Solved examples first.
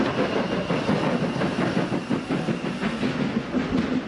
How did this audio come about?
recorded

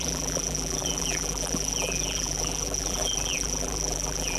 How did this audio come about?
remade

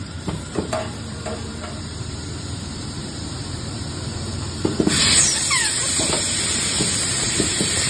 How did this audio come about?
remade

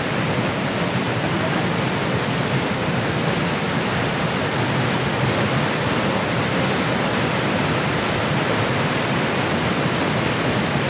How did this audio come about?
recorded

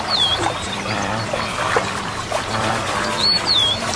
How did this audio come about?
remade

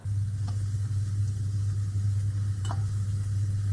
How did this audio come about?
recorded